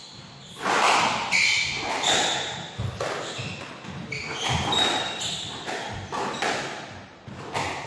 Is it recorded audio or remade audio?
recorded